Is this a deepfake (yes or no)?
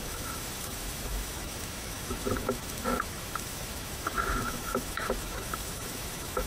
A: yes